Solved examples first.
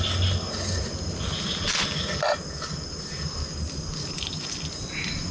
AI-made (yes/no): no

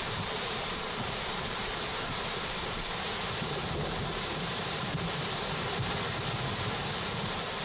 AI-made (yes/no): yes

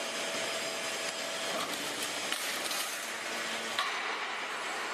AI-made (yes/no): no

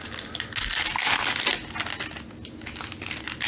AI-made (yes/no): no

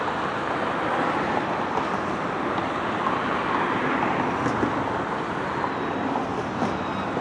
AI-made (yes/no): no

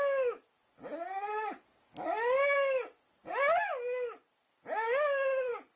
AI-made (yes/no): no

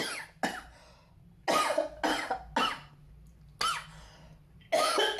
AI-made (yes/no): no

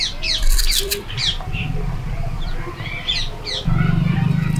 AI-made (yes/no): yes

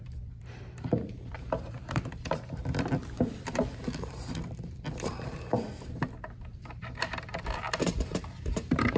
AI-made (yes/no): yes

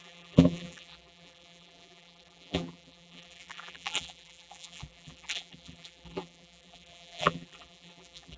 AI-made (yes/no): yes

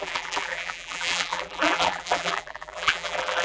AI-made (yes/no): yes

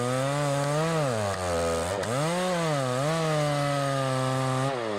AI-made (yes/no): no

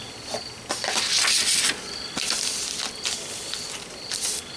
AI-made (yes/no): no